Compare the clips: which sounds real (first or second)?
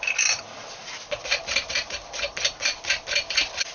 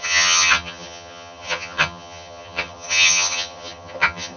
first